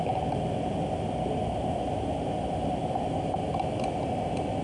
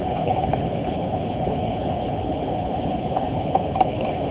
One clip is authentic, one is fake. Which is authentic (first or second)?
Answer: first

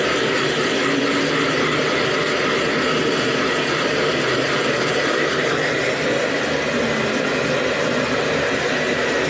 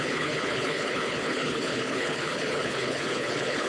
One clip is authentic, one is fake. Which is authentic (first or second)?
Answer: first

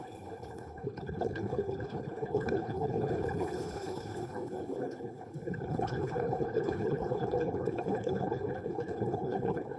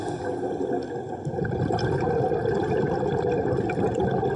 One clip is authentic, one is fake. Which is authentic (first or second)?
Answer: second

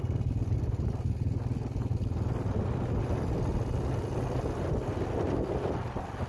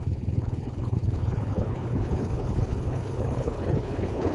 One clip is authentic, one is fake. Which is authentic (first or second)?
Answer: first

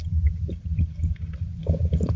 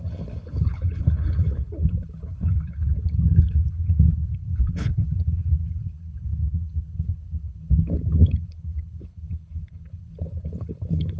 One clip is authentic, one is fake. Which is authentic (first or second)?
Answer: first